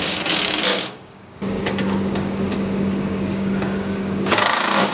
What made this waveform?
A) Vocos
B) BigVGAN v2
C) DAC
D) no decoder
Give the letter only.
C